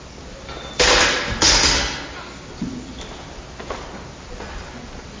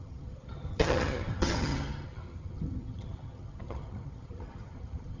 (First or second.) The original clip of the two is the first